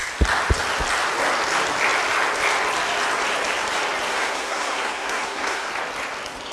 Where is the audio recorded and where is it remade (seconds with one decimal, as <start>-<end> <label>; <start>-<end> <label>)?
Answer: 0.0-4.1 recorded; 4.1-5.7 remade; 5.7-6.5 recorded